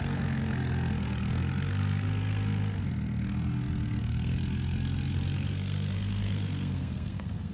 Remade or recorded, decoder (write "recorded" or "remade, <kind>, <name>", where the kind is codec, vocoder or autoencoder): remade, codec, SNAC